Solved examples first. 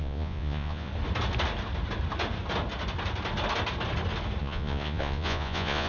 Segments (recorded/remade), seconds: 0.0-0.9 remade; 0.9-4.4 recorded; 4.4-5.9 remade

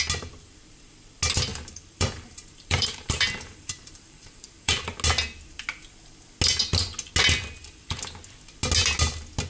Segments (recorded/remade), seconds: 0.0-1.5 recorded; 1.5-4.8 remade; 4.8-7.6 recorded; 7.6-8.2 remade; 8.2-9.5 recorded

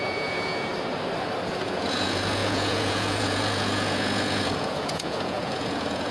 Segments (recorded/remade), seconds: 0.0-0.7 remade; 0.7-1.4 recorded; 1.4-6.1 remade

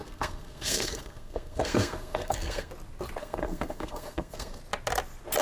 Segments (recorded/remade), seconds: 0.0-2.7 remade; 2.7-3.2 recorded; 3.2-4.6 remade; 4.6-5.4 recorded